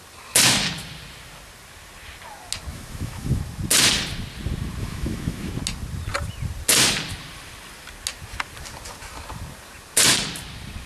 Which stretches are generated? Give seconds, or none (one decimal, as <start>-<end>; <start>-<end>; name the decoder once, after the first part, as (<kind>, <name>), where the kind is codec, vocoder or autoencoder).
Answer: 2.7-3.4 (autoencoder, DAC-VAE); 4.8-5.5